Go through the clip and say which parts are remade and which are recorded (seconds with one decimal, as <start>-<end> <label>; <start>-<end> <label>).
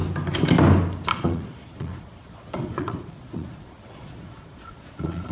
0.0-1.1 recorded; 1.1-5.3 remade